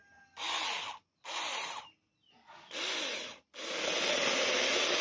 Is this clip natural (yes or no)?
yes